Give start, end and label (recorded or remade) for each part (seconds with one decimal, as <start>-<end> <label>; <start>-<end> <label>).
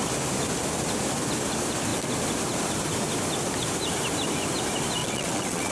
0.0-5.0 recorded; 5.0-5.7 remade